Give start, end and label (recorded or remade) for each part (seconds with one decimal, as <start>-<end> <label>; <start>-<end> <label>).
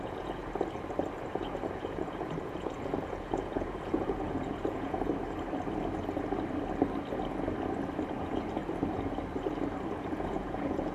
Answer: 0.0-0.4 remade; 0.4-1.3 recorded; 1.3-5.1 remade; 5.1-8.2 recorded; 8.2-8.6 remade; 8.6-10.0 recorded; 10.0-10.9 remade